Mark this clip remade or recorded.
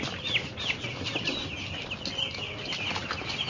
recorded